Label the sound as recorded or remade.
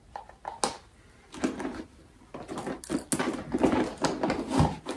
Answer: recorded